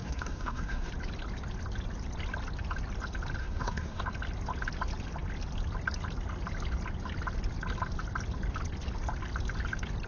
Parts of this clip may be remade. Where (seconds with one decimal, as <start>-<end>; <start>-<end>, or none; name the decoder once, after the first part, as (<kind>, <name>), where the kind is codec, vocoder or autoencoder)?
0.0-0.9 (codec, SNAC); 3.4-4.0

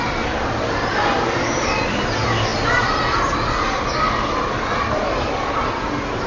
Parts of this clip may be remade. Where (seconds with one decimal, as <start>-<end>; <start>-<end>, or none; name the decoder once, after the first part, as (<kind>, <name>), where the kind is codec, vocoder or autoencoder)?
none